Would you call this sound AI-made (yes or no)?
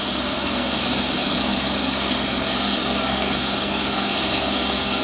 yes